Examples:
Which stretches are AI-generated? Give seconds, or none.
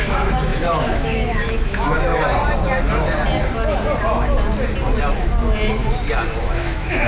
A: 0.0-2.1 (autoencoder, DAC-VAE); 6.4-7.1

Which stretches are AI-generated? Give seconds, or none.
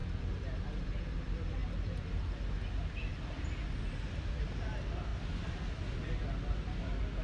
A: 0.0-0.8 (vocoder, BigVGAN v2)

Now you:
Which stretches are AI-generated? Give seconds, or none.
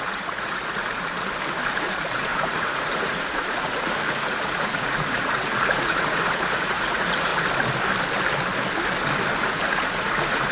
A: 0.0-0.8 (vocoder, Vocos); 1.8-7.3; 9.4-10.5